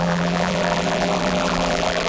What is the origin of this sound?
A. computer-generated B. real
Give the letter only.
A